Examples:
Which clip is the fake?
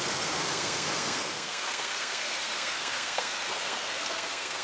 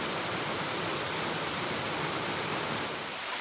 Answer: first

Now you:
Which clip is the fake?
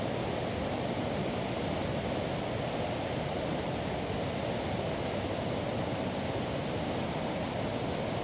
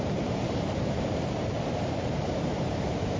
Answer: second